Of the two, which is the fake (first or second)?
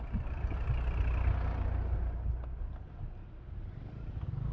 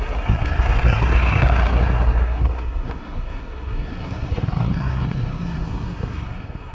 second